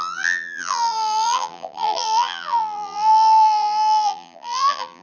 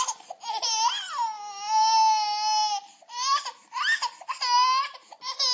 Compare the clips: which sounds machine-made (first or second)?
first